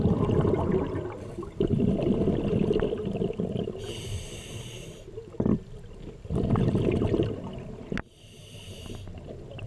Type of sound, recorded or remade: recorded